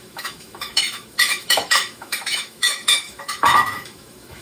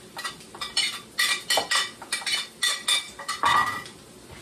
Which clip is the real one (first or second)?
second